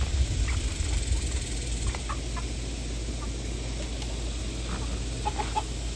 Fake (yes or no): no